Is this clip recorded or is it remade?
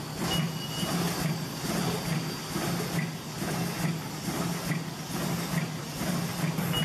recorded